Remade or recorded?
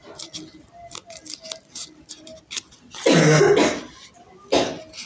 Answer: recorded